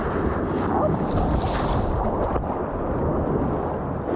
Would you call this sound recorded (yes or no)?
yes